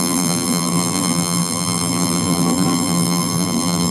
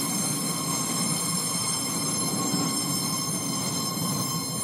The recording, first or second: second